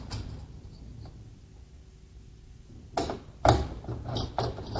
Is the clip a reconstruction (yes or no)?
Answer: no